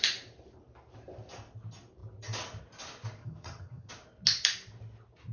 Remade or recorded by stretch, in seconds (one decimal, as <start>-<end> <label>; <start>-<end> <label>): 0.0-3.2 recorded; 3.2-3.9 remade; 3.9-5.3 recorded